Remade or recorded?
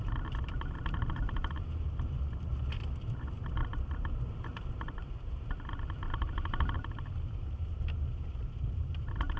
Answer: remade